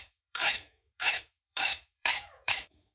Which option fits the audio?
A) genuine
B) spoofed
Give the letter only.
B